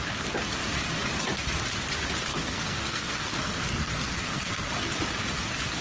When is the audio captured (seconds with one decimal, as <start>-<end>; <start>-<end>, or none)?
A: 0.0-2.3; 4.7-5.8